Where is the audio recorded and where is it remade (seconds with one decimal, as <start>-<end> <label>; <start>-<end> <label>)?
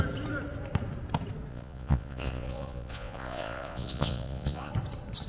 0.0-1.5 recorded; 1.5-4.7 remade; 4.7-5.3 recorded